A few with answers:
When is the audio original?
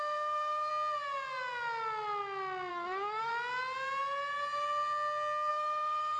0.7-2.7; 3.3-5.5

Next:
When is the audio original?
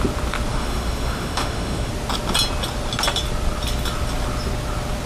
0.0-0.5; 1.9-5.1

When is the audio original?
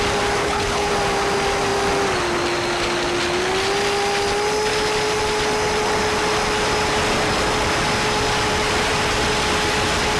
0.0-0.4; 0.9-10.2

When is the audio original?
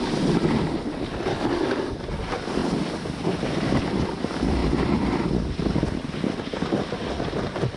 0.0-1.3; 1.9-7.8